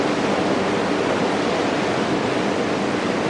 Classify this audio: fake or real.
real